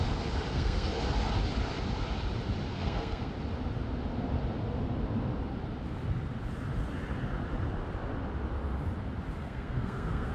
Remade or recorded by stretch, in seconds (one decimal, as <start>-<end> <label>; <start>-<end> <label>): 0.0-0.5 recorded; 0.5-1.0 remade; 1.0-2.7 recorded; 2.7-3.3 remade; 3.3-9.4 recorded; 9.4-10.3 remade